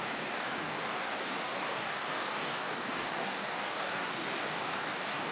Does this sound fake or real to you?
fake